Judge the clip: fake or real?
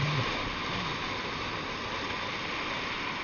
real